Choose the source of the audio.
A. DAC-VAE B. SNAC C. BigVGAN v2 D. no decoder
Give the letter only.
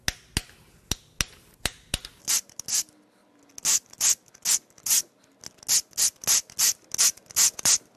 D